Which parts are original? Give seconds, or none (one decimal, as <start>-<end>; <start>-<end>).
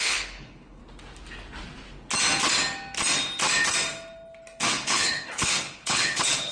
0.8-4.7